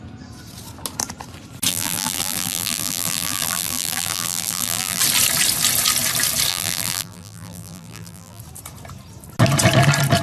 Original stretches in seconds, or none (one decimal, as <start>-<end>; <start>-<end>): 0.0-1.7; 5.0-6.5; 8.4-10.2